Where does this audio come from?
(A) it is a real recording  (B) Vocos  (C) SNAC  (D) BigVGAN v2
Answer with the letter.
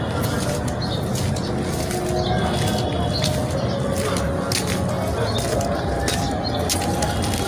A